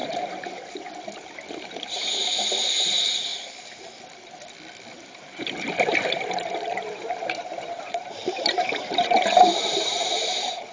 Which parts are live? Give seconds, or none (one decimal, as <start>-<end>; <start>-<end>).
3.3-4.9